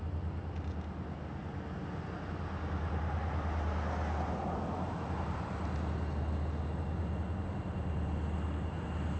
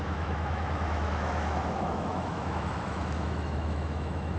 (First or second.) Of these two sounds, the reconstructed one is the second